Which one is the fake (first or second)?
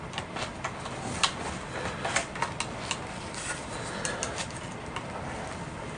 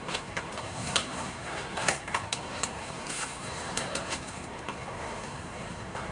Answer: second